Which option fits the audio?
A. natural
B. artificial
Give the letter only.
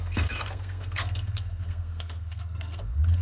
B